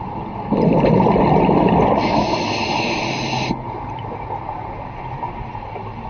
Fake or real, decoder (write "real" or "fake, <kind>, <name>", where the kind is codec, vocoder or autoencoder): real